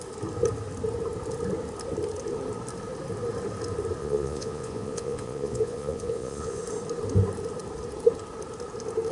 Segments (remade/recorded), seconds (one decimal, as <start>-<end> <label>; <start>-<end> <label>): 0.0-4.0 recorded; 4.0-6.6 remade; 6.6-9.1 recorded